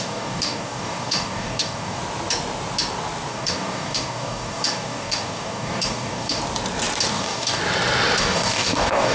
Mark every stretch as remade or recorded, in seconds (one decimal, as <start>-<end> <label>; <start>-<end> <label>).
0.0-2.0 remade; 2.0-3.3 recorded; 3.3-6.4 remade; 6.4-7.1 recorded; 7.1-7.6 remade; 7.6-8.2 recorded; 8.2-9.1 remade